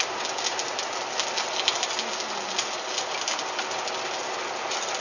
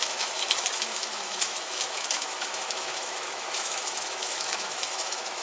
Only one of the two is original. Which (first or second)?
first